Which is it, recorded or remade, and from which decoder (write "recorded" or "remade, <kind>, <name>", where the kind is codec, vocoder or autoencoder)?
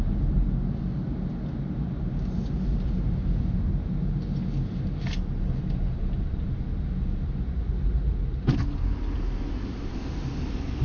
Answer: recorded